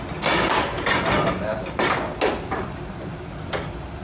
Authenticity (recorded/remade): recorded